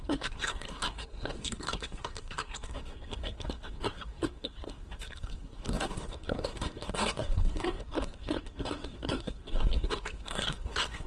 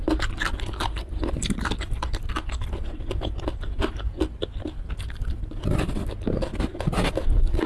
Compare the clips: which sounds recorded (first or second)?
second